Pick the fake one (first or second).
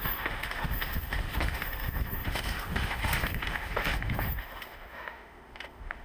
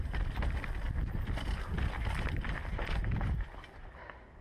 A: first